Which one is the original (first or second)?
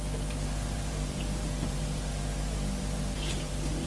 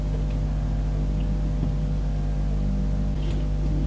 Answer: second